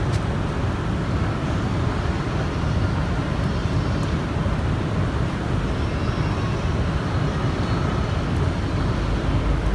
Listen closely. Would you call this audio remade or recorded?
recorded